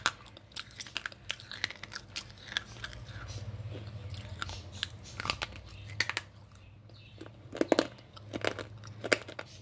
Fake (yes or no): no